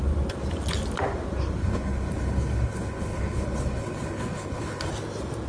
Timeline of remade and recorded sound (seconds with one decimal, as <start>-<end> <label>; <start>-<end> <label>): 0.0-1.6 recorded; 1.6-4.9 remade; 4.9-5.5 recorded

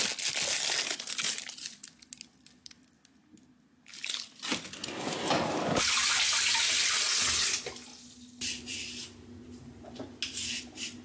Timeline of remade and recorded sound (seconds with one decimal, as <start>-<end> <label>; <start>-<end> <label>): 0.0-11.0 recorded